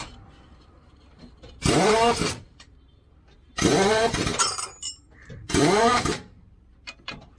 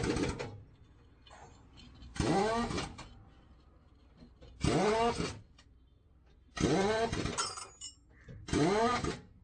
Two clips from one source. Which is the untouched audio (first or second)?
second